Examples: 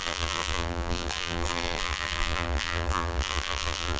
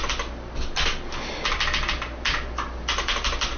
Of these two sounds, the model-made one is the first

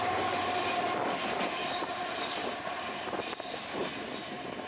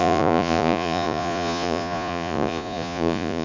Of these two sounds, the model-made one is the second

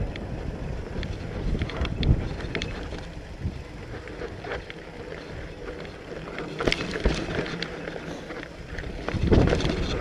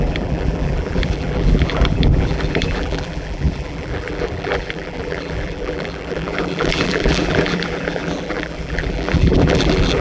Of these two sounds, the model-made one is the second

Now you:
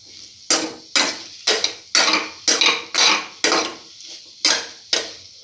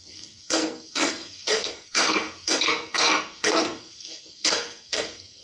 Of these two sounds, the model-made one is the second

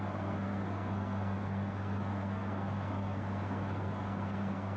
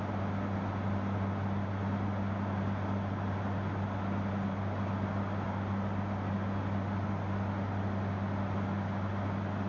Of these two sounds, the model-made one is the first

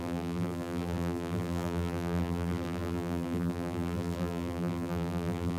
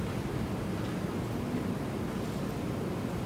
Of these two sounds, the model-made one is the first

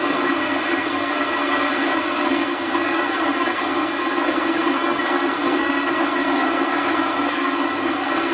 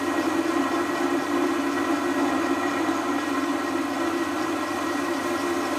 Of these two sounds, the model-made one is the first